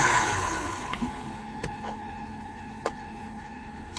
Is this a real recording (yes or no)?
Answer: no